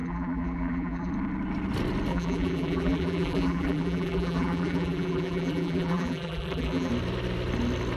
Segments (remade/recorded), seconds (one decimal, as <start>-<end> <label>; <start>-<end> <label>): 0.0-1.1 remade; 1.1-2.1 recorded; 2.1-6.9 remade; 6.9-8.0 recorded